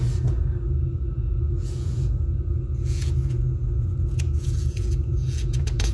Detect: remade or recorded remade